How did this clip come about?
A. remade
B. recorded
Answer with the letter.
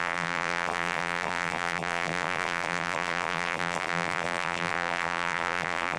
A